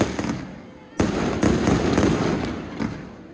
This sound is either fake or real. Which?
real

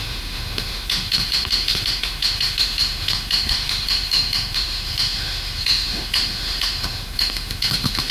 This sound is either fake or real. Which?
fake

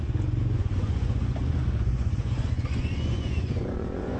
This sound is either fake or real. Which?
fake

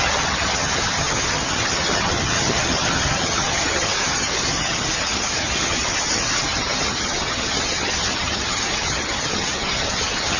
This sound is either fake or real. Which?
fake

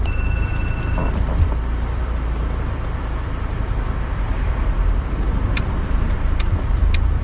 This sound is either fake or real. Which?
fake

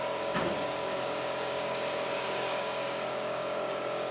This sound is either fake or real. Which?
fake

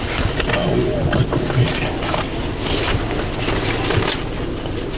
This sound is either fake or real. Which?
real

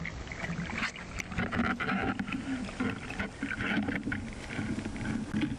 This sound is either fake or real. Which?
real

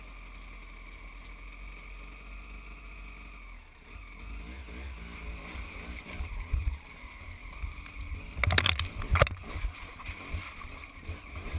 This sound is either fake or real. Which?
real